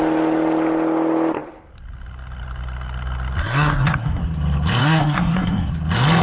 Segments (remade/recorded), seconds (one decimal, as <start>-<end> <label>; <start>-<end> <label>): 0.0-3.4 recorded; 3.4-4.2 remade; 4.2-4.8 recorded; 4.8-5.7 remade; 5.7-6.2 recorded